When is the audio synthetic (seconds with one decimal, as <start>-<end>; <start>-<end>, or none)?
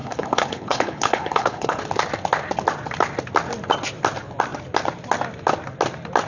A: 0.0-1.8